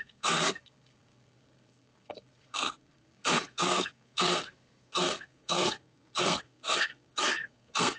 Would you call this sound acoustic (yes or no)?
no